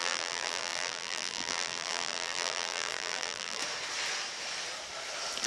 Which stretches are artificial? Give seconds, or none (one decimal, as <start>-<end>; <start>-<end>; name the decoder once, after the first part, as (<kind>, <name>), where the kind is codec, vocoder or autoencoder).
0.0-3.6 (vocoder, BigVGAN v2)